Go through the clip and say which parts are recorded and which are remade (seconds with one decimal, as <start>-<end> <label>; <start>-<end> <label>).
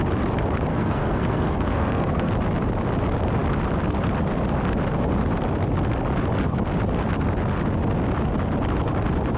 0.0-0.7 recorded; 0.7-2.3 remade; 2.3-9.4 recorded